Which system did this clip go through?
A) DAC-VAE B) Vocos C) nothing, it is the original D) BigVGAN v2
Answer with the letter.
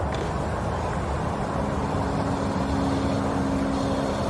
C